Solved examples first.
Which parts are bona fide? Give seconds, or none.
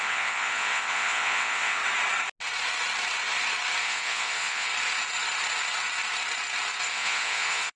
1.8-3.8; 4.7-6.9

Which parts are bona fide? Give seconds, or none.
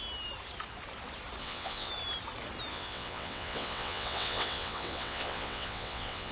0.0-1.4; 1.9-2.7